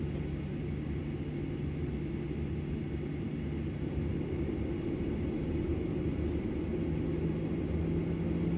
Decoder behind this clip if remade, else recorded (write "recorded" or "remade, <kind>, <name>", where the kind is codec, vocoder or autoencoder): recorded